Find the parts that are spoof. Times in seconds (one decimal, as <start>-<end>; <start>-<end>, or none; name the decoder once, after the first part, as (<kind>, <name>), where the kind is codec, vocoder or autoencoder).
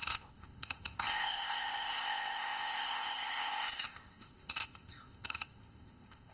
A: 0.0-6.3 (codec, ZipCodec)